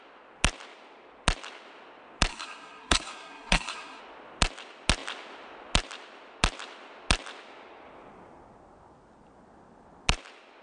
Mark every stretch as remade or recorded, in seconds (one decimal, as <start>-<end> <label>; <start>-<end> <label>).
0.0-2.3 recorded; 2.3-4.0 remade; 4.0-10.6 recorded